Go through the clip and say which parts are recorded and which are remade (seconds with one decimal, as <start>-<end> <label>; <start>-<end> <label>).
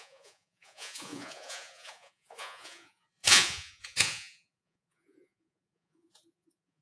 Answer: 0.0-6.8 remade